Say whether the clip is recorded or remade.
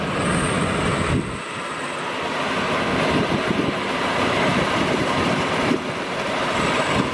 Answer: recorded